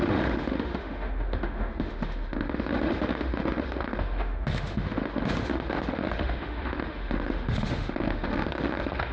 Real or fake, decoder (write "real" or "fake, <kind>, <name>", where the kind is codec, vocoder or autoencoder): fake, autoencoder, DAC-VAE